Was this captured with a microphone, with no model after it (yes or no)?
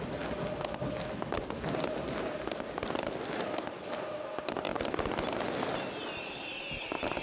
yes